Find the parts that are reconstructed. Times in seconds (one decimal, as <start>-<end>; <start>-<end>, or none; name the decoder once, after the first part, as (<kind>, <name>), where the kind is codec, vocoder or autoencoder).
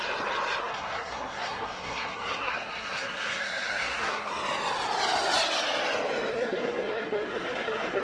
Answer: 0.6-4.3 (codec, SNAC); 6.3-8.0